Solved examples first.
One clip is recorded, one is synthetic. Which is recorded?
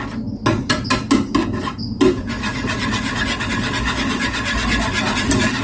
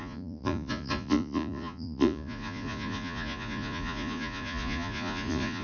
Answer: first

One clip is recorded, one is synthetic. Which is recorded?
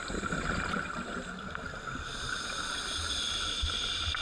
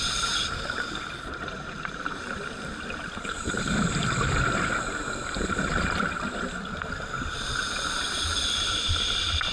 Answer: first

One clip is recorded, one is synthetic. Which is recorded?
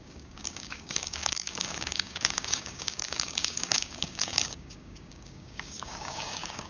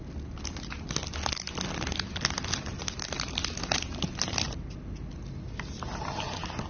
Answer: second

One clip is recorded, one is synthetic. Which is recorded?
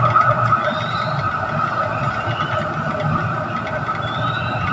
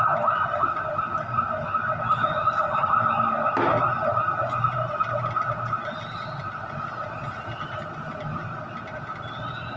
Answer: second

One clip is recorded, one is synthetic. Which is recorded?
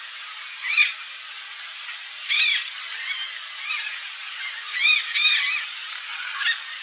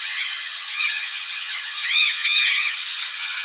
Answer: first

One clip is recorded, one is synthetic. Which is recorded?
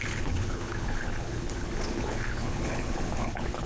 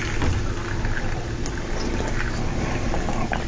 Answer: second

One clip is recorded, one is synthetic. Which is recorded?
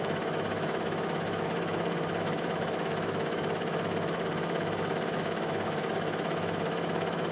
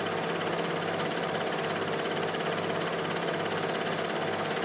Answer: second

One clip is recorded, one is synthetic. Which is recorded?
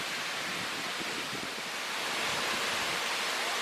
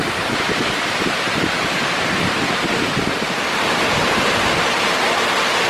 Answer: first